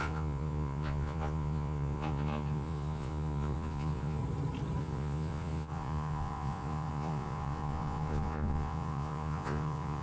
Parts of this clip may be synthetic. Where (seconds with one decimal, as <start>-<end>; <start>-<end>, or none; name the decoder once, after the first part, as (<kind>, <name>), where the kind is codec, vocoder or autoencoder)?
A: 0.0-4.2 (vocoder, Vocos); 4.8-10.0